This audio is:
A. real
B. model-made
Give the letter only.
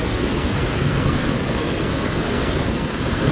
B